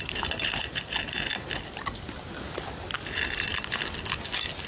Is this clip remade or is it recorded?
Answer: recorded